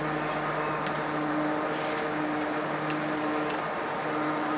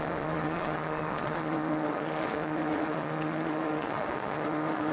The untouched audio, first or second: first